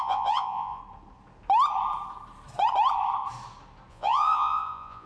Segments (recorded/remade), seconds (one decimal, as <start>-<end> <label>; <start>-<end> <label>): 0.0-0.8 remade; 0.8-3.9 recorded; 3.9-5.1 remade